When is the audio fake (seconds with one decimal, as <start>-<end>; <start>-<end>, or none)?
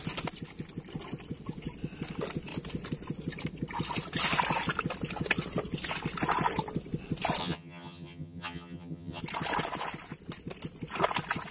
7.4-9.2